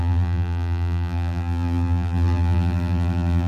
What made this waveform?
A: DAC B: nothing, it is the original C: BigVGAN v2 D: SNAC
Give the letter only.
C